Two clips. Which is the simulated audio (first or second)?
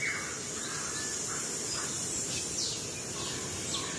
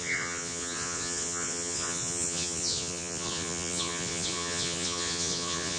second